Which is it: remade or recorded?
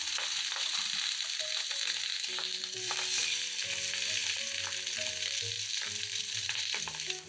remade